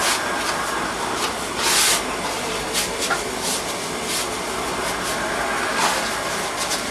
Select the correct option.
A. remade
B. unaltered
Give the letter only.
B